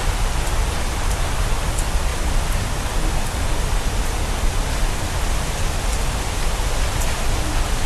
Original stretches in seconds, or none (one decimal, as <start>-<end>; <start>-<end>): 0.0-7.9